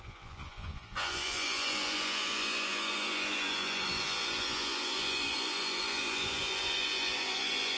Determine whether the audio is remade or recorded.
remade